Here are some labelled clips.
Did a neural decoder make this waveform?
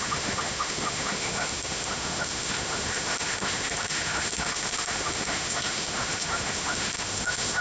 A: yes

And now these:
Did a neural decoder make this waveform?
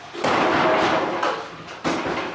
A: no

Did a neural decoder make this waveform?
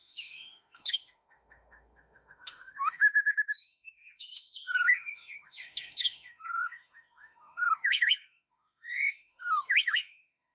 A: yes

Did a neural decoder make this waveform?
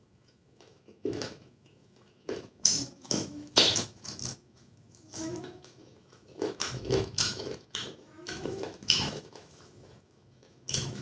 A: yes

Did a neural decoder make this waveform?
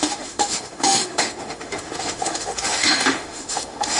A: yes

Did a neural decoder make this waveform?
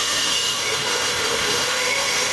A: yes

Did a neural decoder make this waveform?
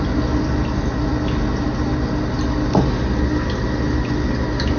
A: no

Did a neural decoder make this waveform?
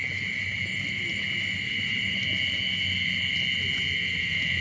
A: no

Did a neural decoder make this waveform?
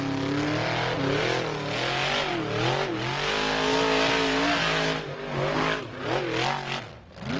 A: no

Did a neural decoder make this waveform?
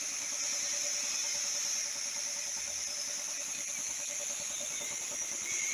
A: no